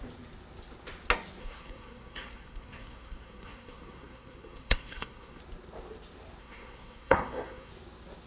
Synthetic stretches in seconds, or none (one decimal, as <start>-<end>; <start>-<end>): 1.4-5.4; 6.4-7.7

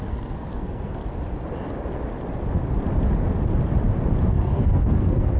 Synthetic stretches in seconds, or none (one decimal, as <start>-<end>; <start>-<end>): 0.0-1.0; 4.2-5.4

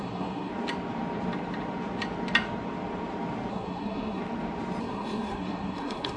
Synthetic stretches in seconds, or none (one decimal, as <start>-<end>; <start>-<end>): 0.0-0.5; 3.5-4.2; 4.8-6.2

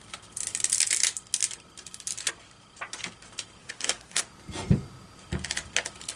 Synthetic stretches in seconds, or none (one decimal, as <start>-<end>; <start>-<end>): 3.6-4.2

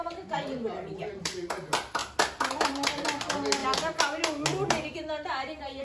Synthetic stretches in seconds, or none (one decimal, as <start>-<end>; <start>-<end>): none

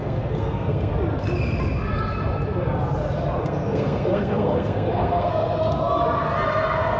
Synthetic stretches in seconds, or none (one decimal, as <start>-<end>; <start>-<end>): 0.0-0.9; 3.4-5.7